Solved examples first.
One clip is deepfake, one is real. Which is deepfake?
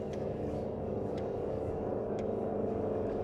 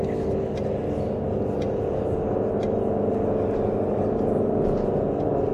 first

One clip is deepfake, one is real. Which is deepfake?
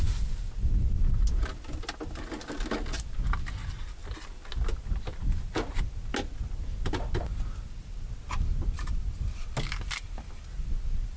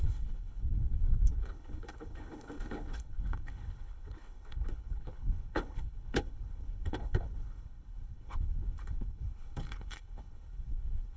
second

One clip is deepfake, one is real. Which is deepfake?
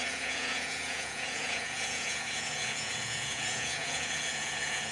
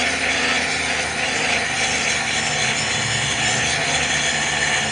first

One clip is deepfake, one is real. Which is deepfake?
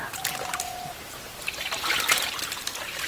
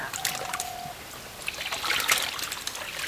first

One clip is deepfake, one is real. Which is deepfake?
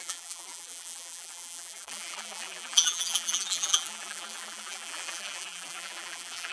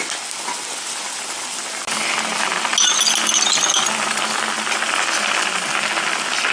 first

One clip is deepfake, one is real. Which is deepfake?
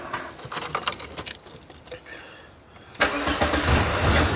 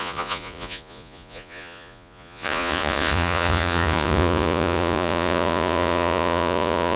second